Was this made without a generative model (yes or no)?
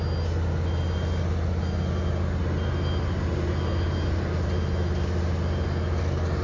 yes